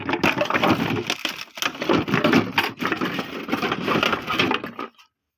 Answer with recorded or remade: recorded